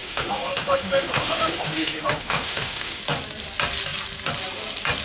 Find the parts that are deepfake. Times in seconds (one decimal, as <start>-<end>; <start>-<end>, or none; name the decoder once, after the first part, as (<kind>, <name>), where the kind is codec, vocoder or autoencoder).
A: 0.0-3.0 (autoencoder, DAC-VAE)